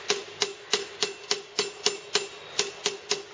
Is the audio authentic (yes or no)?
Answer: yes